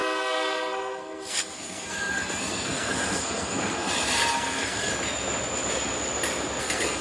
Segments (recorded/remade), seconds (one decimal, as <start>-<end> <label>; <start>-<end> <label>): 0.0-4.9 remade; 4.9-6.6 recorded; 6.6-7.0 remade